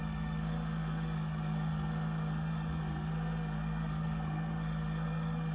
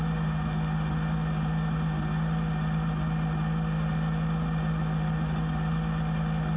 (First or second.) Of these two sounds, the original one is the second